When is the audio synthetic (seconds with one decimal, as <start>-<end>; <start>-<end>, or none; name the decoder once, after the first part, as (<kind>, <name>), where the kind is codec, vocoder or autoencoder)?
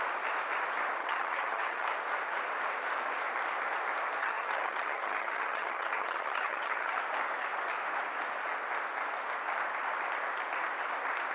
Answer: 1.0-1.9 (vocoder, HiFi-GAN); 4.2-7.0